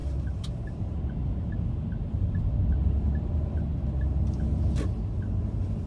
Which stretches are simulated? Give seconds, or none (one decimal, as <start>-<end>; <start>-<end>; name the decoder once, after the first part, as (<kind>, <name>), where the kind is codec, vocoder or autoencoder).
none